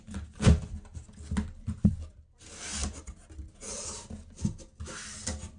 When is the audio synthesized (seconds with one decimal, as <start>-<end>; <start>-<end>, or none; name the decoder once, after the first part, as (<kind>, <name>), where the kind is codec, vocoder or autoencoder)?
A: none